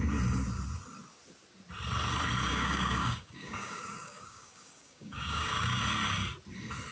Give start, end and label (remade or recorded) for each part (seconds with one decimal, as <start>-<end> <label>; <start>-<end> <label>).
0.0-2.5 recorded; 2.5-5.8 remade; 5.8-6.9 recorded